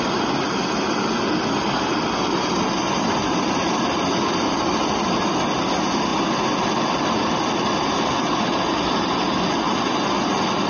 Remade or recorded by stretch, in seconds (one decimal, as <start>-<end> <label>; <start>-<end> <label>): 0.0-10.7 recorded